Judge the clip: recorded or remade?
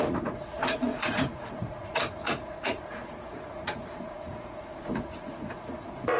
remade